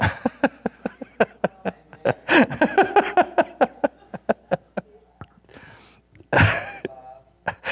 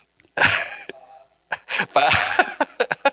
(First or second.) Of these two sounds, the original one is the first